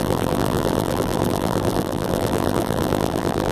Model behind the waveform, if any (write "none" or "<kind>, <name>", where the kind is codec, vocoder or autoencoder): vocoder, BigVGAN v2